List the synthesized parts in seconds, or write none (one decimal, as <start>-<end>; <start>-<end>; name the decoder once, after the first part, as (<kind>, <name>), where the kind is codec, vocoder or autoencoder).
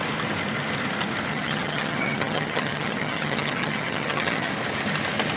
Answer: 1.3-4.5 (vocoder, HiFi-GAN)